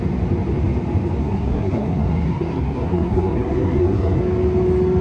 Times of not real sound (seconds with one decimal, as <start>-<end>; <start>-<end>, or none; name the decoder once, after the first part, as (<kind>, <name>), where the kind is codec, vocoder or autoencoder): 1.2-4.2 (codec, SNAC)